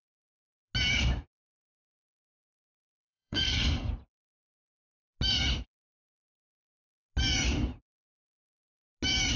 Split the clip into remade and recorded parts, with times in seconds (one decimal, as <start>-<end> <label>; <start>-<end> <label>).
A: 0.0-3.0 recorded; 3.0-3.9 remade; 3.9-9.4 recorded